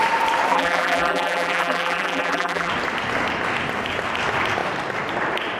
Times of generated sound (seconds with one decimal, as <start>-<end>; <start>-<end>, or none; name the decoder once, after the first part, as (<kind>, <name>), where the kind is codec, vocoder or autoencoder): 0.5-2.7 (vocoder, BigVGAN v2)